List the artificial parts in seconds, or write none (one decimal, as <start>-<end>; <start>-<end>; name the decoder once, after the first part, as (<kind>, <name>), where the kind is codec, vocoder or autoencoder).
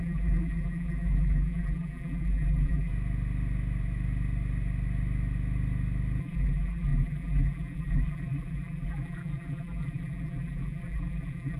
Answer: 0.0-2.9 (vocoder, BigVGAN v2); 6.2-11.6